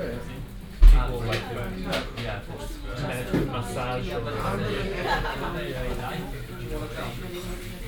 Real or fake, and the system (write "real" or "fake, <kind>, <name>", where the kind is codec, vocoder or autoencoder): real